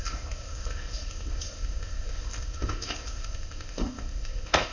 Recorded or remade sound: remade